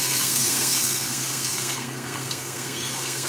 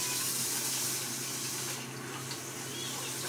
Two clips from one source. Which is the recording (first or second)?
second